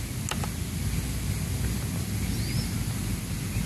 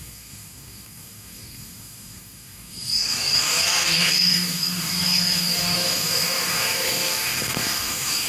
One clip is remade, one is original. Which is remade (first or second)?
second